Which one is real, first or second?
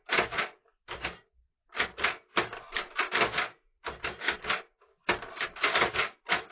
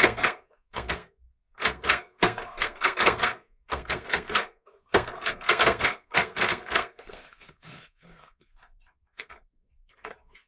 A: first